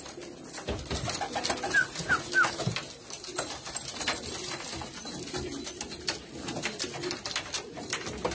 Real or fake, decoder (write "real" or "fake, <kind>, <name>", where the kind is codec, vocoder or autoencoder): real